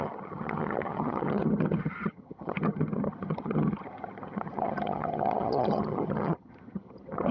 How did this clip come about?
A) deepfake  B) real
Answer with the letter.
A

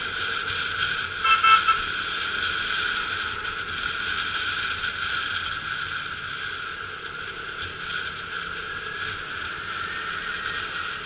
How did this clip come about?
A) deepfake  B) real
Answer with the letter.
B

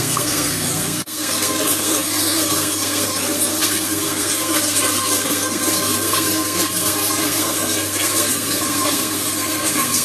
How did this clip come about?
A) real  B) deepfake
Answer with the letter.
B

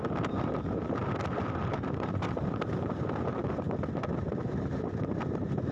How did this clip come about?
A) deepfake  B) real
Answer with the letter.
A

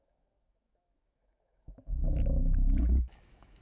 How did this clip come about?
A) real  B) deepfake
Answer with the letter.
B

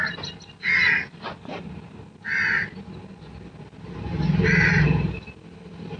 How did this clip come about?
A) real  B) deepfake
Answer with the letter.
A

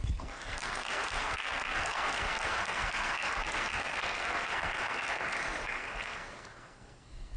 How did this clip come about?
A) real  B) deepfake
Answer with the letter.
B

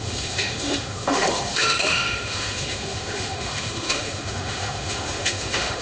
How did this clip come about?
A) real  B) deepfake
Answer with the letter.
B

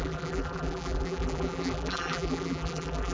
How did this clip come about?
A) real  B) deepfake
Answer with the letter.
B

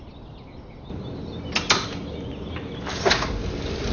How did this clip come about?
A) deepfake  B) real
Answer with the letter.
B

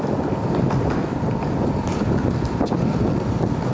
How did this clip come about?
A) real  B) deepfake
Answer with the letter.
A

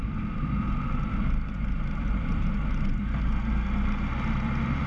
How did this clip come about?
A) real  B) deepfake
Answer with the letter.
A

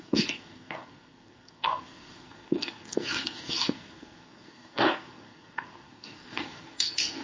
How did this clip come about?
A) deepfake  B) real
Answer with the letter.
A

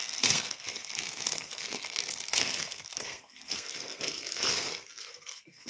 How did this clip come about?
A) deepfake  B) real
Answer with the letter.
A